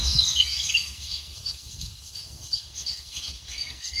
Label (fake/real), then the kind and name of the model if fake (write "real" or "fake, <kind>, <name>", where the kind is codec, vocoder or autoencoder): fake, codec, SNAC